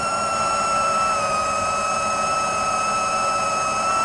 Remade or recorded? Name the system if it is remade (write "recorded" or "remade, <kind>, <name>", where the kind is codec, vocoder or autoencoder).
remade, vocoder, BigVGAN v2